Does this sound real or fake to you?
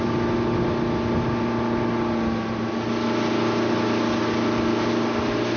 real